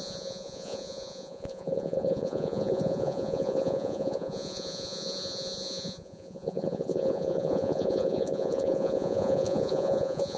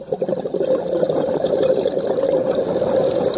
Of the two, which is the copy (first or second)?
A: first